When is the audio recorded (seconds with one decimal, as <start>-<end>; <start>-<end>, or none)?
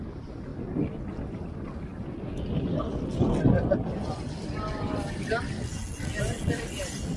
0.0-7.2